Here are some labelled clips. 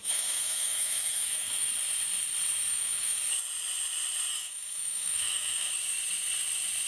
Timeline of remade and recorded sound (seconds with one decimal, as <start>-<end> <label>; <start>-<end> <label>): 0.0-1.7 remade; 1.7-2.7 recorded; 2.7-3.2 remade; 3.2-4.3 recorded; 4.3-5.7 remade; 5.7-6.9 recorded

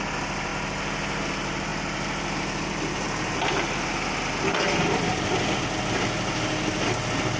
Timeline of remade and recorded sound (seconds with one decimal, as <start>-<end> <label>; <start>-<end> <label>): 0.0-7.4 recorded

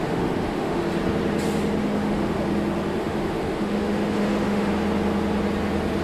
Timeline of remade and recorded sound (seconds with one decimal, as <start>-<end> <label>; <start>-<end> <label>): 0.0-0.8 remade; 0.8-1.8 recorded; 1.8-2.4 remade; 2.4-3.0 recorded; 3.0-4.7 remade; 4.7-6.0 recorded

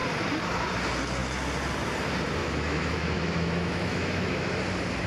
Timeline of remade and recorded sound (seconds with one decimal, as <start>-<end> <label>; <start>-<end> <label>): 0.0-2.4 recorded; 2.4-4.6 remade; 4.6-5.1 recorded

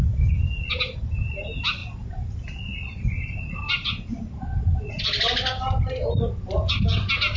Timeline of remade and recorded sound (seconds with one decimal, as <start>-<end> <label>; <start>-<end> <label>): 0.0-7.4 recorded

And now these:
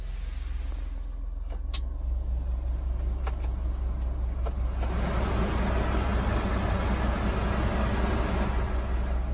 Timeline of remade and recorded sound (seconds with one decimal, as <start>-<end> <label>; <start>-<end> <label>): 0.0-9.3 recorded

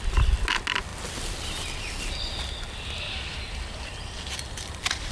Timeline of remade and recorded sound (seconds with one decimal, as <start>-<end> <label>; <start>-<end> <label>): 0.0-5.1 recorded

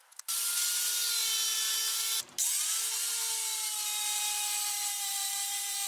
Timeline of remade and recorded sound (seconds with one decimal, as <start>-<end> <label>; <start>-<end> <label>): 0.0-5.9 recorded